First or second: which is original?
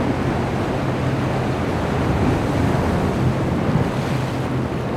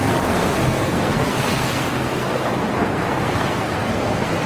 first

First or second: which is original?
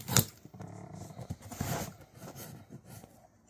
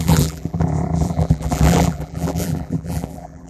first